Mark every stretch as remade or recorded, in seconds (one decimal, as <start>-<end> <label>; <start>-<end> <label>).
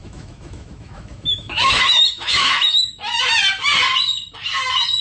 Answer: 0.0-3.0 remade; 3.0-5.0 recorded